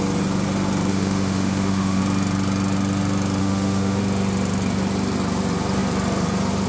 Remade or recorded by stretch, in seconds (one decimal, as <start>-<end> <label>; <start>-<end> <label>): 0.0-0.9 recorded; 0.9-2.0 remade; 2.0-3.4 recorded; 3.4-4.0 remade; 4.0-6.7 recorded

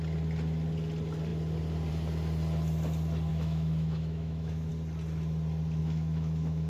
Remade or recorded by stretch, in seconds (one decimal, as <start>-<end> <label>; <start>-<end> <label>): 0.0-3.3 recorded; 3.3-4.7 remade; 4.7-5.8 recorded; 5.8-6.7 remade

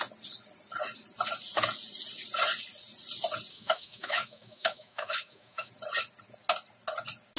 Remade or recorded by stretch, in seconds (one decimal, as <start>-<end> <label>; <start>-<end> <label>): 0.0-3.5 recorded; 3.5-5.7 remade; 5.7-7.4 recorded

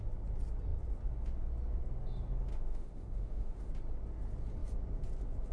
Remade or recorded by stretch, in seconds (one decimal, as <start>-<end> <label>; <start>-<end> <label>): 0.0-2.5 recorded; 2.5-3.7 remade; 3.7-5.5 recorded

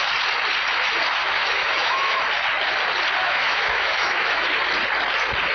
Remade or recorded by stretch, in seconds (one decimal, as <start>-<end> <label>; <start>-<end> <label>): 0.0-1.2 recorded; 1.2-2.2 remade; 2.2-3.2 recorded; 3.2-4.5 remade; 4.5-5.5 recorded

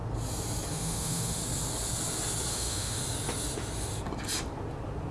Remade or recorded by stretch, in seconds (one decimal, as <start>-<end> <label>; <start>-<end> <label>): 0.0-0.7 recorded; 0.7-1.4 remade; 1.4-2.5 recorded; 2.5-3.0 remade; 3.0-5.1 recorded

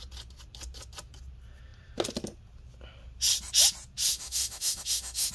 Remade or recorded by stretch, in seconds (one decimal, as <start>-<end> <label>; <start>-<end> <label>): 0.0-4.1 recorded; 4.1-5.3 remade

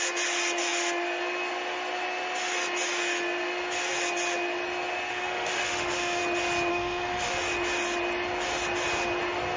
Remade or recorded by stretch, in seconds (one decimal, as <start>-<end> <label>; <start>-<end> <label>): 0.0-5.1 recorded; 5.1-6.2 remade; 6.2-6.7 recorded; 6.7-7.3 remade; 7.3-9.6 recorded